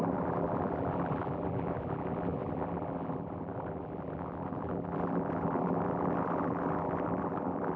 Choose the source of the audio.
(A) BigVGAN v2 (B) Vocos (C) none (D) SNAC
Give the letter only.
A